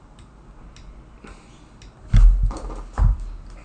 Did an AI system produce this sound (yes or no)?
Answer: no